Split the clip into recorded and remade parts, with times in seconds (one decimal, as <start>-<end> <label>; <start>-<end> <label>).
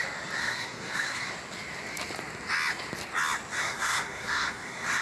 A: 0.0-0.4 recorded; 0.4-1.3 remade; 1.3-3.6 recorded; 3.6-5.0 remade